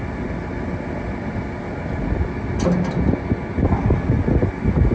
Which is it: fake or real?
real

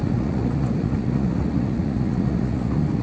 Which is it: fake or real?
fake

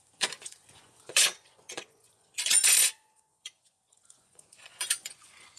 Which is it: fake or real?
fake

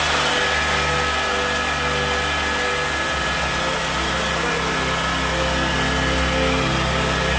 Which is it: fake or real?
real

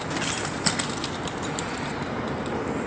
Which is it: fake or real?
real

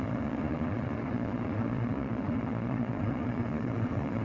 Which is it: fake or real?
fake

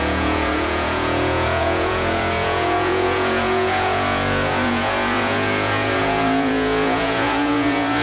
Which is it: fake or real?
fake